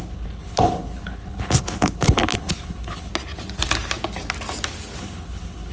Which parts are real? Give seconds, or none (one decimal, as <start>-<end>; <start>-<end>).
3.1-5.0